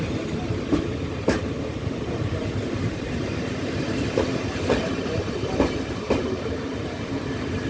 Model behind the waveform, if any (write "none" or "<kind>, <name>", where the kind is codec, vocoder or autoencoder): vocoder, BigVGAN v2